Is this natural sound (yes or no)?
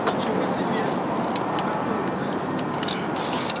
yes